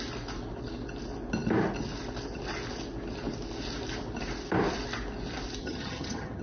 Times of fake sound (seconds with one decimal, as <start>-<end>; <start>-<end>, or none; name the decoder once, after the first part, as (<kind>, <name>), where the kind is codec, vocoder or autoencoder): 5.6-6.4 (vocoder, HiFi-GAN)